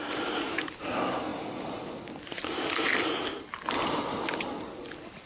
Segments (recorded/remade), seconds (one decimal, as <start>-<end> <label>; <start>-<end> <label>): 0.0-5.3 recorded